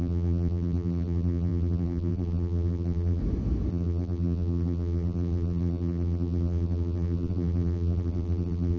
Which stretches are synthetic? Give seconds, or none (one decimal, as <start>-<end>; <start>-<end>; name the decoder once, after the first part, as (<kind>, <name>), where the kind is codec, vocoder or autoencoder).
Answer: 0.0-3.2 (vocoder, BigVGAN v2); 3.7-8.8